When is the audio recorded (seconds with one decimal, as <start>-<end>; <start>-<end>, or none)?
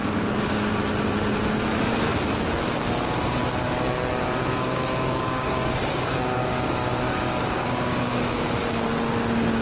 0.7-4.6; 8.3-9.6